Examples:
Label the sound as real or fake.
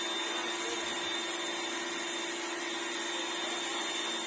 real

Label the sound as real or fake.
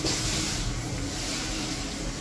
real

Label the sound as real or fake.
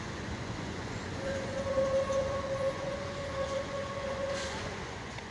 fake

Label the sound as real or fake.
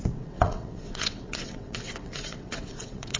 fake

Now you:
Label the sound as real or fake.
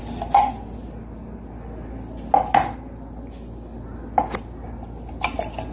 real